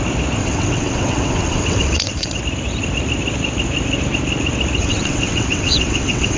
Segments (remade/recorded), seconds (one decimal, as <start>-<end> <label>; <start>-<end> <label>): 0.0-0.4 recorded; 0.4-2.4 remade; 2.4-4.8 recorded; 4.8-6.4 remade